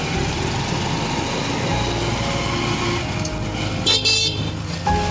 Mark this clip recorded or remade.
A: recorded